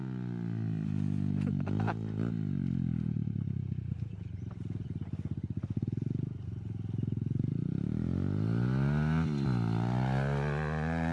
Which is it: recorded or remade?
recorded